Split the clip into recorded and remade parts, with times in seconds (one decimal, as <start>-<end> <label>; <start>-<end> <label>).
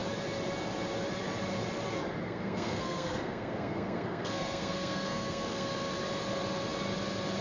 0.0-2.2 recorded; 2.2-5.9 remade; 5.9-7.4 recorded